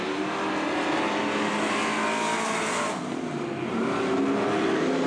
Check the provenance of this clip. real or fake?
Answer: real